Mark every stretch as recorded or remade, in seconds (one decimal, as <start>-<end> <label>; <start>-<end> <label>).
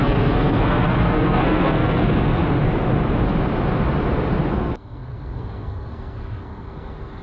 0.0-2.4 remade; 2.4-4.5 recorded; 4.5-7.2 remade